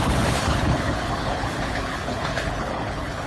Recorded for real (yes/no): no